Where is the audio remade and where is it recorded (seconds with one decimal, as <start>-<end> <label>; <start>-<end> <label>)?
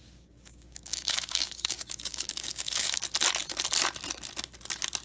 0.0-3.0 remade; 3.0-5.0 recorded